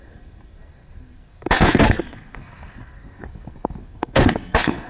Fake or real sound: fake